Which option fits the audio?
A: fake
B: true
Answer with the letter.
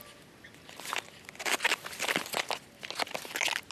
B